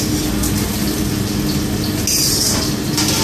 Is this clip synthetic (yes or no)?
no